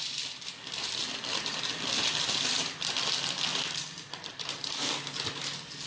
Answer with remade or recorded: recorded